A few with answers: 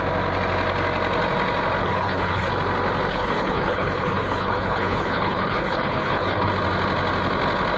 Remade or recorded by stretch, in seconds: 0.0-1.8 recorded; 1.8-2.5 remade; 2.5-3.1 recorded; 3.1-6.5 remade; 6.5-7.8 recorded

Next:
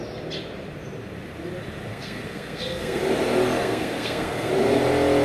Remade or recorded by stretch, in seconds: 0.0-1.9 recorded; 1.9-3.0 remade; 3.0-3.6 recorded; 3.6-4.5 remade; 4.5-5.2 recorded

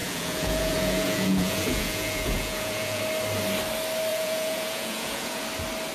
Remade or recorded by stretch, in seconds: 0.0-3.0 remade; 3.0-4.1 recorded; 4.1-5.4 remade; 5.4-5.9 recorded

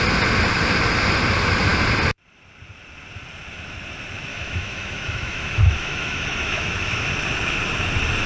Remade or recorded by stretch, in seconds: 0.0-4.3 recorded; 4.3-7.1 remade; 7.1-8.3 recorded

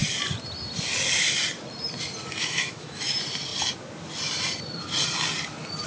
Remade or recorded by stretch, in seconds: 0.0-2.4 recorded; 2.4-3.1 remade; 3.1-5.9 recorded